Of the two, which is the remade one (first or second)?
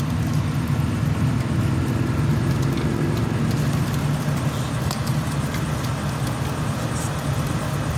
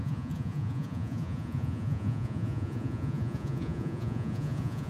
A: second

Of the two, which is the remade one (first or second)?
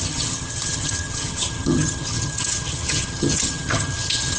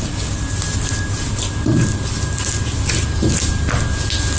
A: first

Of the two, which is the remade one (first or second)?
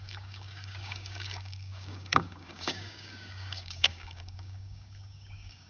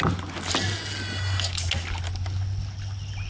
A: first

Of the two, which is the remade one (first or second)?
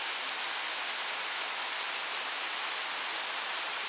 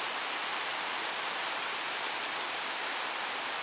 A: second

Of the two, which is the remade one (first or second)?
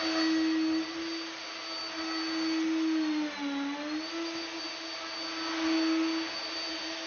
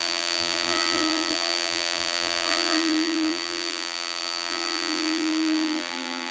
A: second